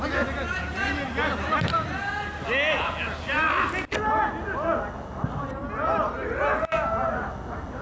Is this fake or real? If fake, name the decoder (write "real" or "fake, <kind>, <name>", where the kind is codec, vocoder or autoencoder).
real